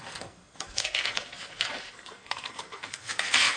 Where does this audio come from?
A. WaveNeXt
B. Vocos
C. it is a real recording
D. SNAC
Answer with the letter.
D